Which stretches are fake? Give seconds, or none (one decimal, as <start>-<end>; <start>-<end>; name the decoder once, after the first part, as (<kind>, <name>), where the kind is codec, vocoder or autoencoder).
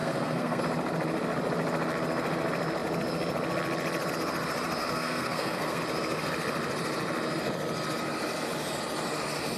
0.0-0.6 (codec, SNAC); 4.8-5.8